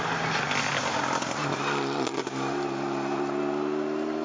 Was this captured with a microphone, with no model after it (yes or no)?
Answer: yes